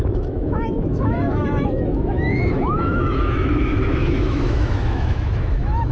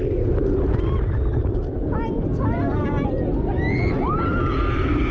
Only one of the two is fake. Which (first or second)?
first